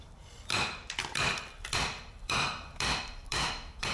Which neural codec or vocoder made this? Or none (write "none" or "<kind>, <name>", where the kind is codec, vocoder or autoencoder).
vocoder, BigVGAN v2